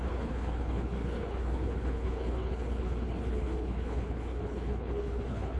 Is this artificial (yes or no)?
yes